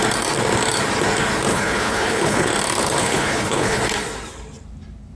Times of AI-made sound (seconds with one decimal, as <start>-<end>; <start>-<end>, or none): 1.5-2.5; 3.0-3.8